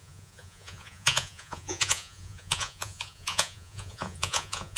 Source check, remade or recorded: remade